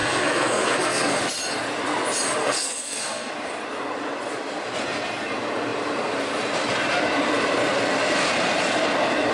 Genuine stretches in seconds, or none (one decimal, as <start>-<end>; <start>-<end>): 1.2-2.4; 3.3-9.3

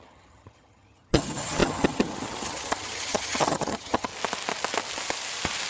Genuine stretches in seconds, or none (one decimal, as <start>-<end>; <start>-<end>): 4.1-5.7

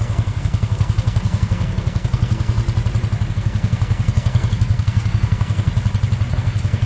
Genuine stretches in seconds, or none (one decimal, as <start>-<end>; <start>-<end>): 2.6-3.3; 5.7-6.3

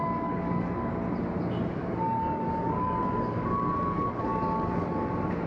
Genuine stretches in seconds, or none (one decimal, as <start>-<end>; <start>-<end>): 0.9-1.8; 5.1-5.5